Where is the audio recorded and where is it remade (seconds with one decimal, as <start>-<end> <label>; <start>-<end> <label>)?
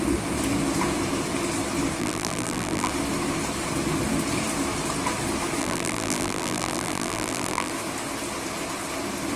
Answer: 0.0-2.0 recorded; 2.0-2.9 remade; 2.9-5.6 recorded; 5.6-7.7 remade; 7.7-9.4 recorded